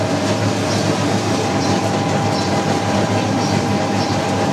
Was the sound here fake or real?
real